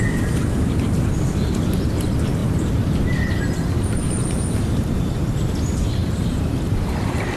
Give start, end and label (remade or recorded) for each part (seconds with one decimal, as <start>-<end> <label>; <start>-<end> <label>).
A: 0.0-2.4 recorded; 2.4-4.9 remade; 4.9-6.0 recorded; 6.0-6.8 remade; 6.8-7.4 recorded